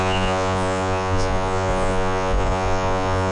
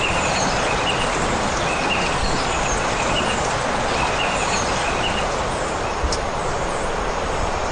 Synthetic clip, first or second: first